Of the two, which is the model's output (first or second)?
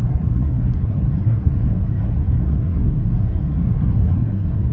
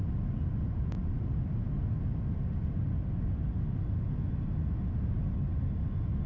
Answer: first